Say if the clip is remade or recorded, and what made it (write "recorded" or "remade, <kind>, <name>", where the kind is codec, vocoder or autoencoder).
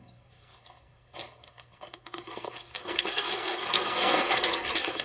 remade, codec, SNAC